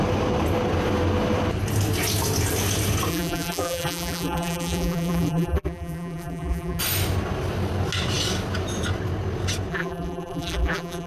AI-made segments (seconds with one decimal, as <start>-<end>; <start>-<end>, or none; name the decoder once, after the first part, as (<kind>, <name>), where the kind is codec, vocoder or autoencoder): 3.1-6.8 (vocoder, BigVGAN v2); 9.7-11.1